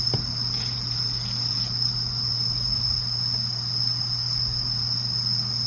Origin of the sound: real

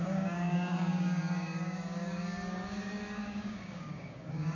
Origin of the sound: fake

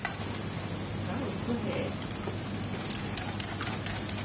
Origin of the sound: real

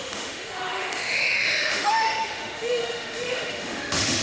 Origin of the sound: fake